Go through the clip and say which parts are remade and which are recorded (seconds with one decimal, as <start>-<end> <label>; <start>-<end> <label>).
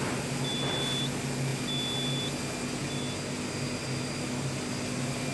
0.0-5.3 recorded